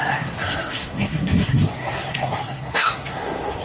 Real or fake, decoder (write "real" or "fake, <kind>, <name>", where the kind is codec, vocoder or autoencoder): fake, codec, SNAC